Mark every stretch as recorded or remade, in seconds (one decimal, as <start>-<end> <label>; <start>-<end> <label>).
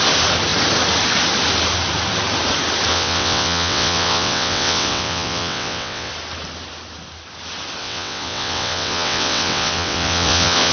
0.0-2.9 recorded; 2.9-6.1 remade; 6.1-7.8 recorded; 7.8-10.7 remade